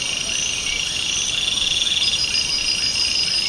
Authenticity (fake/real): real